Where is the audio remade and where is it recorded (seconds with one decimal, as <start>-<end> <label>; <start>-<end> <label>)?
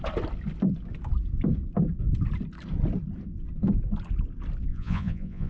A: 0.0-4.7 recorded; 4.7-5.5 remade